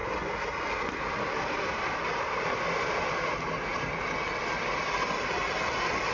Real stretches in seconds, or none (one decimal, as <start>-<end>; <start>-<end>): 0.0-6.1